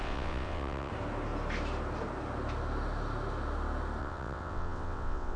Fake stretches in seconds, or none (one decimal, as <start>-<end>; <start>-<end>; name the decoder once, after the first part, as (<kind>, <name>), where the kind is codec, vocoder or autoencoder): 0.0-0.9 (vocoder, WaveNeXt); 4.0-5.4